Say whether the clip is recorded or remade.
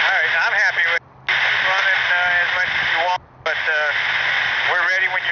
recorded